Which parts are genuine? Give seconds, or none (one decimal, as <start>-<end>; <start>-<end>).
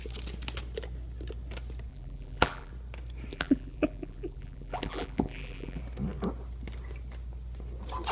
0.0-1.9; 2.7-3.3; 5.8-8.1